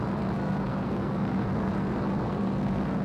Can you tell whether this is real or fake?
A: fake